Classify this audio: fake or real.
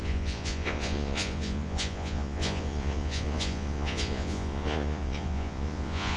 fake